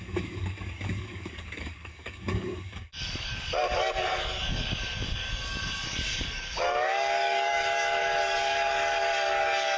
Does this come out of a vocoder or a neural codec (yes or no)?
yes